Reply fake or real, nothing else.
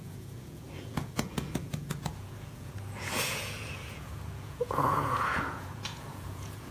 fake